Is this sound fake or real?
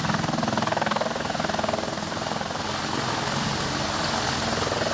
real